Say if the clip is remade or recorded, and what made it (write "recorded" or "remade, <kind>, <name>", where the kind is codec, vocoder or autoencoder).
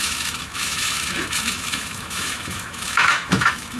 remade, autoencoder, DAC-VAE